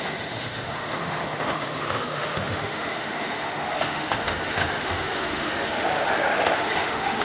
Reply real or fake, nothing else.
fake